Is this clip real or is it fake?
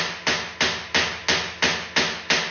real